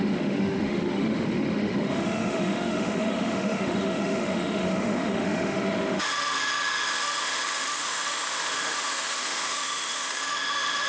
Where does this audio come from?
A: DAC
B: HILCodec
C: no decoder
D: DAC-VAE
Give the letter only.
D